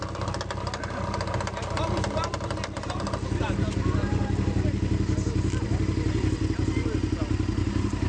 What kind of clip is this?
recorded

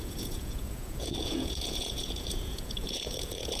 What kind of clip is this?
remade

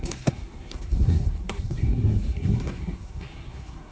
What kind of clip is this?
remade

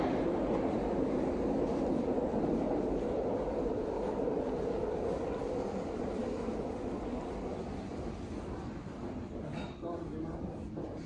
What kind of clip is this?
recorded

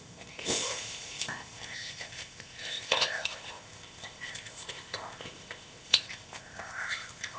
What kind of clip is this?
remade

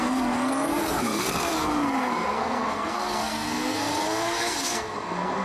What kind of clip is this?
remade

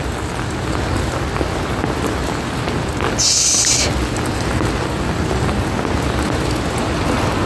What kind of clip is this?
recorded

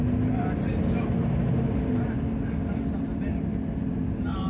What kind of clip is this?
recorded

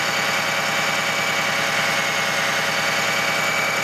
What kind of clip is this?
recorded